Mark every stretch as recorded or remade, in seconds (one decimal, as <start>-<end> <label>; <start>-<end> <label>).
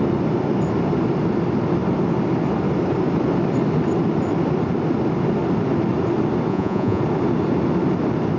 0.0-6.5 recorded; 6.5-7.0 remade; 7.0-8.4 recorded